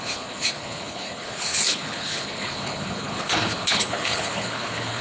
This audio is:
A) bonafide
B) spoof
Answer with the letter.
B